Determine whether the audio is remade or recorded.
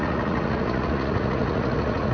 remade